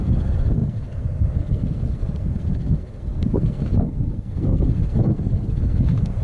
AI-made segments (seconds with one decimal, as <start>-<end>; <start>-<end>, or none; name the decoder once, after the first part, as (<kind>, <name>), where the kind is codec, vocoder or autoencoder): 0.0-6.2 (codec, SNAC)